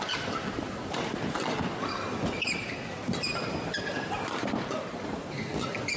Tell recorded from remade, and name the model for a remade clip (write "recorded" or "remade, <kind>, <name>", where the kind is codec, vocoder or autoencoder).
recorded